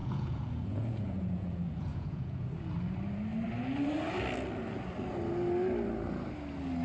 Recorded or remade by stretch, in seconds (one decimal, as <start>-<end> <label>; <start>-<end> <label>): 0.0-2.5 remade; 2.5-6.8 recorded